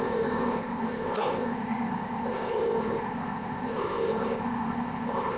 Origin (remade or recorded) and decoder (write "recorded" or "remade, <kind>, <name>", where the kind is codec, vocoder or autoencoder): remade, codec, ZipCodec